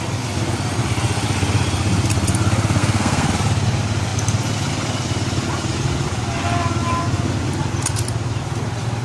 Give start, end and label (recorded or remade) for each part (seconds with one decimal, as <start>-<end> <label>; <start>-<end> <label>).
0.0-2.8 recorded; 2.8-3.3 remade; 3.3-9.0 recorded

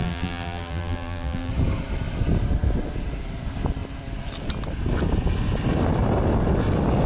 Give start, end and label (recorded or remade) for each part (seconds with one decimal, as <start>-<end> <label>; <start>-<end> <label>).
0.0-1.5 remade; 1.5-7.1 recorded

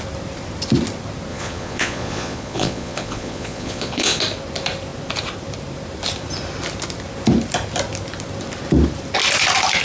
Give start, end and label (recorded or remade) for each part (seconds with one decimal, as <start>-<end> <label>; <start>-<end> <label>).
0.0-1.3 recorded; 1.3-4.2 remade; 4.2-9.8 recorded

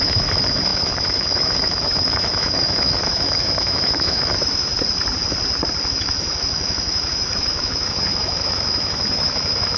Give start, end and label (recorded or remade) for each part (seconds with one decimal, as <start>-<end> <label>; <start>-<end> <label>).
0.0-4.7 remade; 4.7-5.9 recorded; 5.9-9.8 remade

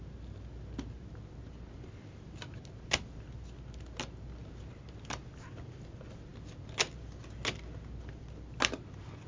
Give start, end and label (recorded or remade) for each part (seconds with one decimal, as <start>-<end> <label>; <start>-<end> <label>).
0.0-9.3 recorded

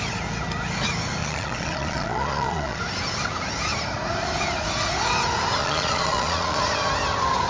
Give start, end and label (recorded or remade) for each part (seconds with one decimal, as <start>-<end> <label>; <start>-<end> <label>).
0.0-1.2 recorded; 1.2-2.8 remade; 2.8-5.6 recorded; 5.6-6.6 remade; 6.6-7.5 recorded

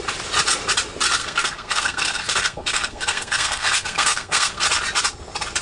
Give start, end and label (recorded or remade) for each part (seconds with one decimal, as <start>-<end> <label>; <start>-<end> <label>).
0.0-1.2 recorded; 1.2-4.6 remade; 4.6-5.6 recorded

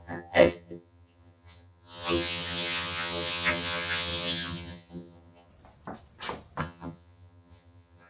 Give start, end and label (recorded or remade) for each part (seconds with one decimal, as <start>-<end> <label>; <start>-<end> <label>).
0.0-5.5 remade; 5.5-6.6 recorded; 6.6-8.1 remade